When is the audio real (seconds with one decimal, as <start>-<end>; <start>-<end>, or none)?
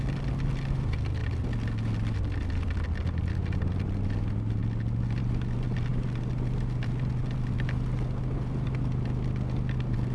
0.0-10.1